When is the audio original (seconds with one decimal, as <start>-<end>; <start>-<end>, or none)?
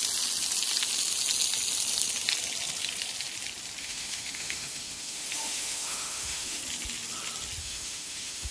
0.0-3.8; 6.6-7.6